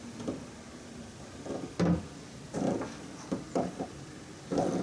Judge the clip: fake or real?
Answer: real